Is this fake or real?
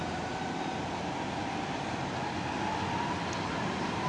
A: real